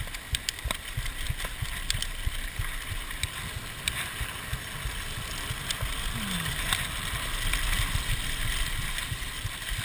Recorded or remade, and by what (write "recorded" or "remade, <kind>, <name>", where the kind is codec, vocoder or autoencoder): recorded